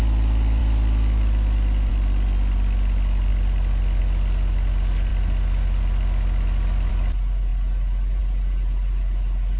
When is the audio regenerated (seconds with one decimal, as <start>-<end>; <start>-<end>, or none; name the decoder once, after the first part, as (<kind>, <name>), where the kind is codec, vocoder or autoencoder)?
none